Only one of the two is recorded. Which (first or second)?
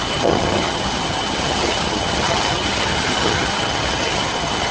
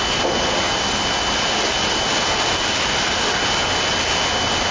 second